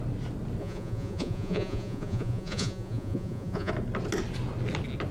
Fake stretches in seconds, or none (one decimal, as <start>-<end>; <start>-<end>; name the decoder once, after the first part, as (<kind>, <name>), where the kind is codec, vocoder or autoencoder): 0.6-3.7 (vocoder, Vocos)

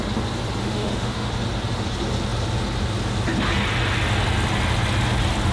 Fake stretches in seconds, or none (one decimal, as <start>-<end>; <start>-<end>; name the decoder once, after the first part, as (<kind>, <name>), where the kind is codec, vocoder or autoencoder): 0.6-1.3 (autoencoder, DAC-VAE)

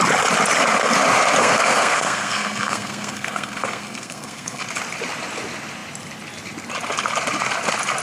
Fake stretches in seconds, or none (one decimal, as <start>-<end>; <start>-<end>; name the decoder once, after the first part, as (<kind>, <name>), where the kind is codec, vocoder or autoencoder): 1.4-4.6 (codec, SNAC)

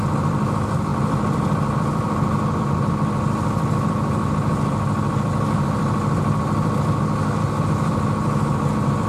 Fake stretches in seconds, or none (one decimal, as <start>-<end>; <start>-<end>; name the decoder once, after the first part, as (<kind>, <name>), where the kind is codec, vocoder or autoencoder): none

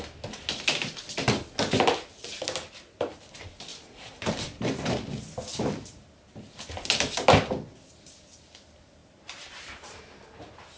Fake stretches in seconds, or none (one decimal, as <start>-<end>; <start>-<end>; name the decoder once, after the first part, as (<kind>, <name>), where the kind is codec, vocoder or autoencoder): 3.7-4.3 (vocoder, BigVGAN v2); 5.5-6.3; 9.0-10.0